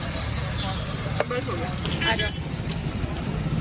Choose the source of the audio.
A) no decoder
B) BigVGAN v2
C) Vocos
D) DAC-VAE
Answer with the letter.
A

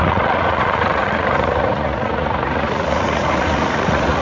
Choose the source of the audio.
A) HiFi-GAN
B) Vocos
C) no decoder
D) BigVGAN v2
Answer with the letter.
B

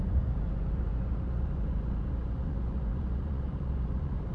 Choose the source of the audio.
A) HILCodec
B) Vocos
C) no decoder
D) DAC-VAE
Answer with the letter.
B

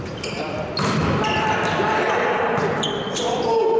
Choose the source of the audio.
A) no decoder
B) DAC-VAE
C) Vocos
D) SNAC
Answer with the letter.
A